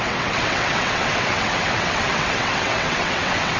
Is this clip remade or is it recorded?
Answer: remade